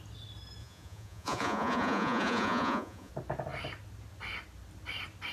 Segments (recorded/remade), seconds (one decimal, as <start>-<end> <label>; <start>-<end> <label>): 0.0-0.6 recorded; 0.6-3.1 remade; 3.1-5.3 recorded